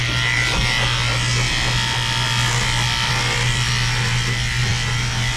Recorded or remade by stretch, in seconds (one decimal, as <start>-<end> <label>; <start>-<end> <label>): 0.0-5.4 recorded